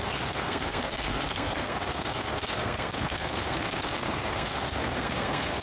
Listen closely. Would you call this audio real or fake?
fake